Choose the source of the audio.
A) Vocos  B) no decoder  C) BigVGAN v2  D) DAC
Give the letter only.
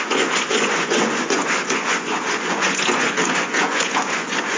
A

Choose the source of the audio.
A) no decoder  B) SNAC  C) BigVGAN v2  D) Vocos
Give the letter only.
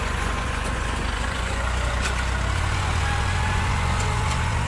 D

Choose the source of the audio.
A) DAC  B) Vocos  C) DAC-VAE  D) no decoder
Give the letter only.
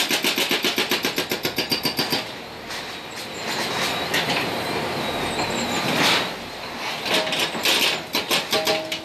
D